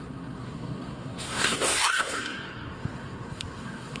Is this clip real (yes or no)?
no